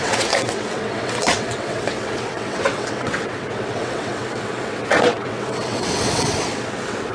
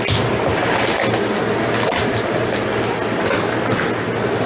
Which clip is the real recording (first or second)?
second